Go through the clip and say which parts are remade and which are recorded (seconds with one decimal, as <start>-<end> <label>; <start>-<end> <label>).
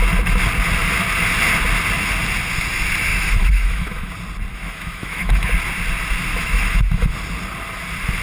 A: 0.0-3.1 recorded; 3.1-4.1 remade; 4.1-4.5 recorded; 4.5-5.5 remade; 5.5-6.3 recorded; 6.3-7.1 remade; 7.1-8.2 recorded